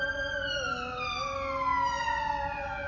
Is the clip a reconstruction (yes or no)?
no